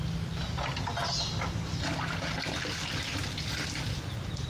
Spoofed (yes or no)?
no